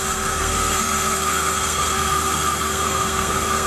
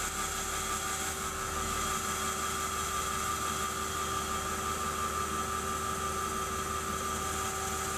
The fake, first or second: first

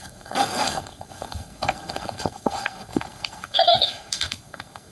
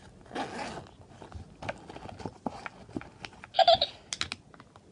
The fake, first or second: first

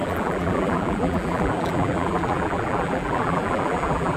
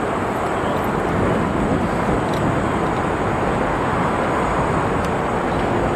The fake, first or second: first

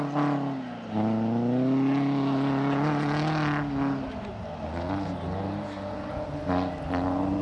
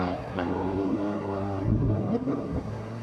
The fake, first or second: second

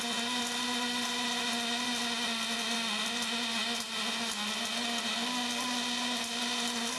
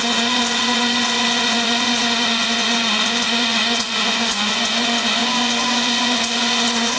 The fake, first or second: second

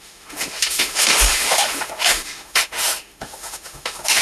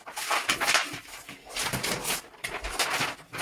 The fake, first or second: first